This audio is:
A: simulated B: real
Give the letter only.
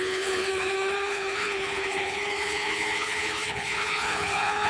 A